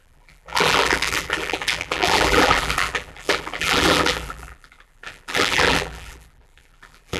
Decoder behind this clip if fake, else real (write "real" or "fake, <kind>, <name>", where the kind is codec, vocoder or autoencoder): fake, vocoder, BigVGAN v2